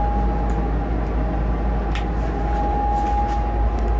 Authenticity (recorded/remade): recorded